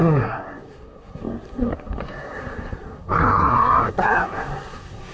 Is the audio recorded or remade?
remade